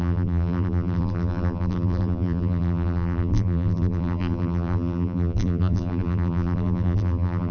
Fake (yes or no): yes